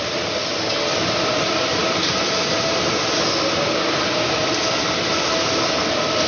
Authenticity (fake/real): real